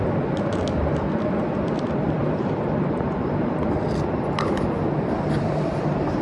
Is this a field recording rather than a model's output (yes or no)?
no